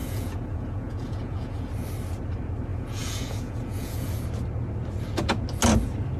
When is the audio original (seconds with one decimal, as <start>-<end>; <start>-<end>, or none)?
1.7-2.7; 4.1-6.2